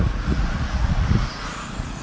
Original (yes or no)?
no